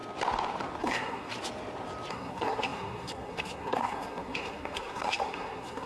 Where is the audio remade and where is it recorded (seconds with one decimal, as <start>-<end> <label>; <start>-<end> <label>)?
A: 0.0-0.8 recorded; 0.8-1.3 remade; 1.3-2.1 recorded; 2.1-5.9 remade